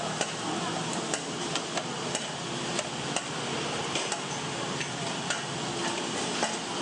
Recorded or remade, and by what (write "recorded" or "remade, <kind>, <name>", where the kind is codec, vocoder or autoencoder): recorded